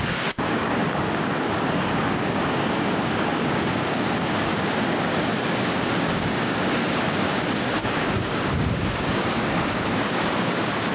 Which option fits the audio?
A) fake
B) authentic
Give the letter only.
A